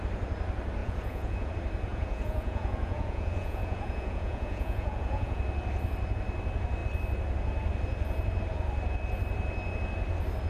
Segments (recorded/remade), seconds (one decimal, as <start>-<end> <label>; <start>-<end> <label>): 0.0-0.8 recorded; 0.8-1.5 remade; 1.5-1.9 recorded; 1.9-5.4 remade; 5.4-10.5 recorded